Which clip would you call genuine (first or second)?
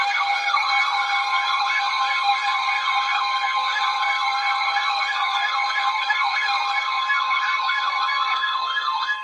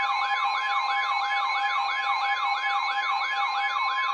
second